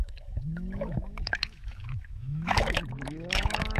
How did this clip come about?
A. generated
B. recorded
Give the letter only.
A